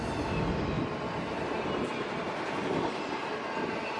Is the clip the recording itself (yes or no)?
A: yes